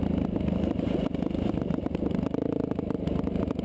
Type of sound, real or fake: real